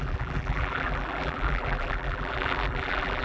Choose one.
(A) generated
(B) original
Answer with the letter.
A